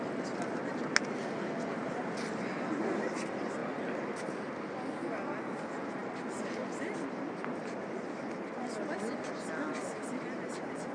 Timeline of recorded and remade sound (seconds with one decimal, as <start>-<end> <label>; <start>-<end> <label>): 0.0-10.9 recorded